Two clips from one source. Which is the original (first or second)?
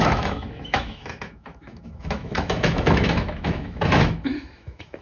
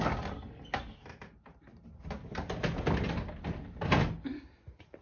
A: second